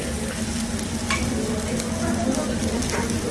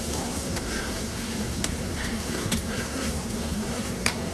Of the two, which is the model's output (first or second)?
second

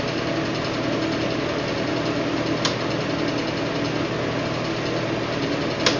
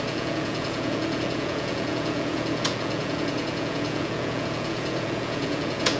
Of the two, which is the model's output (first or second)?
second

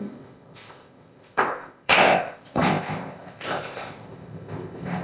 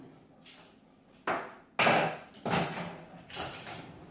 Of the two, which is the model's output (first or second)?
first